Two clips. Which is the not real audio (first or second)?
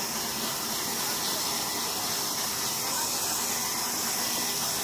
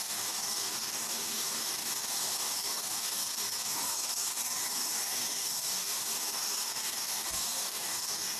second